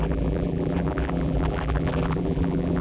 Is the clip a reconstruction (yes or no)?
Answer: yes